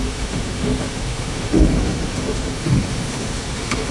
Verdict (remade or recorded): remade